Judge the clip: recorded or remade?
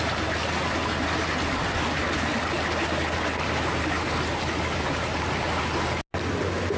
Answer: recorded